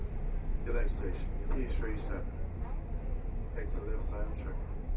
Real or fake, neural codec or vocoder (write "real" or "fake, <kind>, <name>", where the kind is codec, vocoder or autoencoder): real